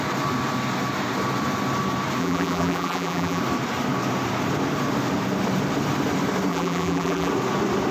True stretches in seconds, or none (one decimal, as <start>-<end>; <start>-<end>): 0.0-2.2; 3.4-6.5; 7.3-7.9